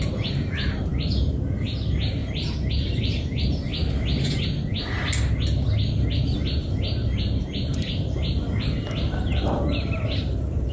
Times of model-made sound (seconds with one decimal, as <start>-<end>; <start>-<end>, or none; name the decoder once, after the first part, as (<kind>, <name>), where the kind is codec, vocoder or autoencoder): 0.0-2.2 (vocoder, BigVGAN v2); 2.7-3.7; 6.1-10.7